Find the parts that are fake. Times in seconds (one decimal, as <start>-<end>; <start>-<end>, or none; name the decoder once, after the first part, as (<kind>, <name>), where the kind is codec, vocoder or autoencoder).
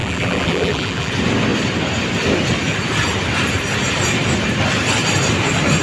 0.0-1.1 (vocoder, BigVGAN v2)